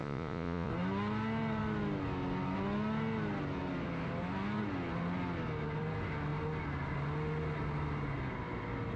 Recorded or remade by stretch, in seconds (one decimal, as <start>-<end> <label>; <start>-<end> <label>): 0.0-0.7 remade; 0.7-9.0 recorded